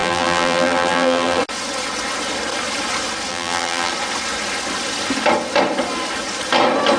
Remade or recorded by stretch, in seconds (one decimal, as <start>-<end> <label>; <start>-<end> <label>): 0.0-1.4 remade; 1.4-3.3 recorded; 3.3-3.9 remade; 3.9-7.0 recorded